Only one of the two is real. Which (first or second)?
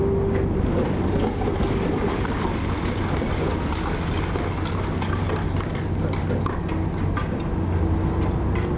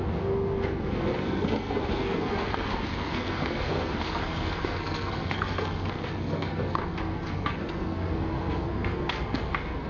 first